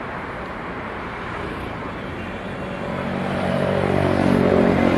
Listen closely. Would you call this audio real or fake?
fake